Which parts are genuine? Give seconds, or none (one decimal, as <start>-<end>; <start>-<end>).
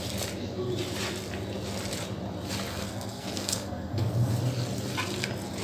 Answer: 0.0-2.7; 4.3-5.6